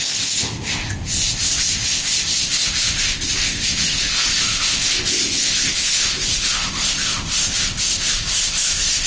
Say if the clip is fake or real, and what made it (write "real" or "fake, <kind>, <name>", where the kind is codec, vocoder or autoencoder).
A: fake, codec, ZipCodec